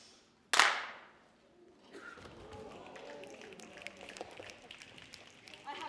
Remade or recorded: recorded